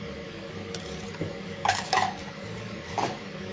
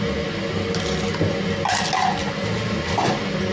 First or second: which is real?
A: second